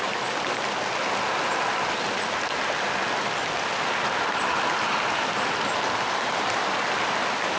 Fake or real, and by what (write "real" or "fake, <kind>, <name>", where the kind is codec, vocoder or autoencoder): real